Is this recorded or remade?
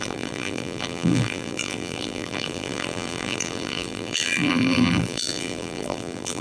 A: remade